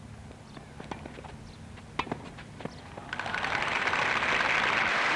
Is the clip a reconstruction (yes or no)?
no